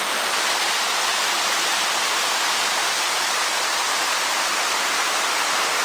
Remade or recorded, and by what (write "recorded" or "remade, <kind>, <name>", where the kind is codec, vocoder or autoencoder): remade, vocoder, BigVGAN v2